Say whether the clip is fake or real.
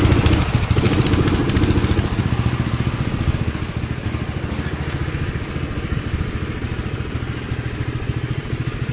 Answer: fake